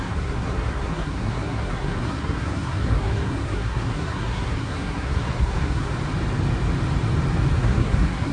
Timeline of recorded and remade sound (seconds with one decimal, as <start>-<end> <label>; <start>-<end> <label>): 0.0-5.9 remade; 5.9-7.6 recorded; 7.6-8.3 remade